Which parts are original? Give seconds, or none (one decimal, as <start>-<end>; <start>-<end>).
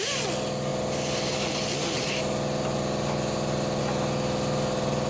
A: 0.0-5.1